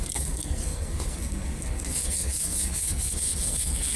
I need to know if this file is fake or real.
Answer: fake